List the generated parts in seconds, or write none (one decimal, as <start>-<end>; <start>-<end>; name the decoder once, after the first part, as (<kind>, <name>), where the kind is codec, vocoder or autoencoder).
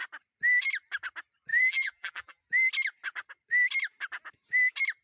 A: 1.5-2.4 (vocoder, BigVGAN v2)